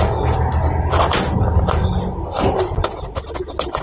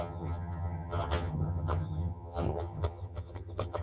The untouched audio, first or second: first